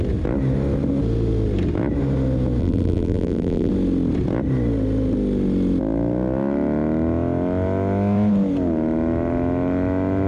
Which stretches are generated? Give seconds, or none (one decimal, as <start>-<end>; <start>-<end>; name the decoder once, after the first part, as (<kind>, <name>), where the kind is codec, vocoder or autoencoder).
2.6-3.7 (vocoder, BigVGAN v2)